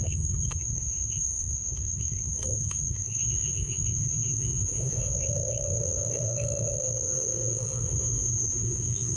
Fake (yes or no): yes